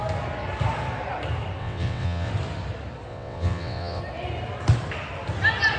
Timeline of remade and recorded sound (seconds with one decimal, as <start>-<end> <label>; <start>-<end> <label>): 0.0-1.6 recorded; 1.6-2.3 remade; 2.3-3.1 recorded; 3.1-4.0 remade; 4.0-5.8 recorded